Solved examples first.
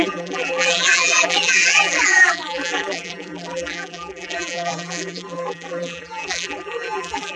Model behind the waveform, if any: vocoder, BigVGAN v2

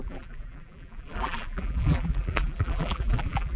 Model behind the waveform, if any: vocoder, BigVGAN v2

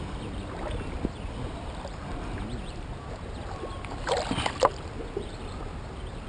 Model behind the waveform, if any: none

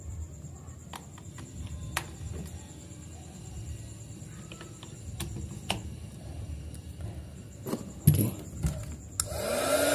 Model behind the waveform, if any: none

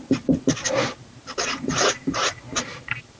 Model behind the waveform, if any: vocoder, BigVGAN v2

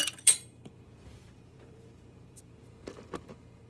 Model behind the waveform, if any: vocoder, BigVGAN v2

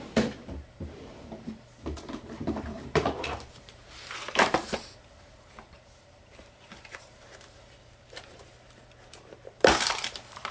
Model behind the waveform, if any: vocoder, BigVGAN v2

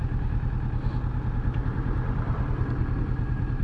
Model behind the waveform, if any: none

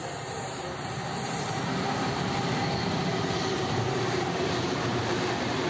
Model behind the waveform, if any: vocoder, BigVGAN v2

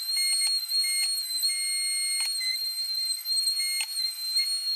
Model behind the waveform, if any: none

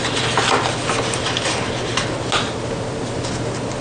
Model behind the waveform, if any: none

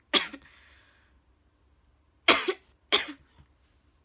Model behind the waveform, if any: none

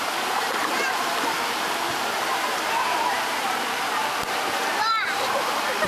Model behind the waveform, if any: vocoder, BigVGAN v2